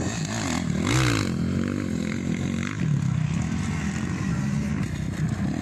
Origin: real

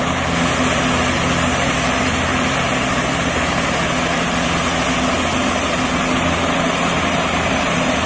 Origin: real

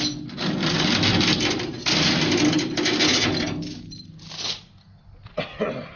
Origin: real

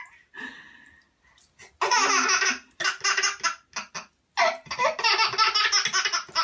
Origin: real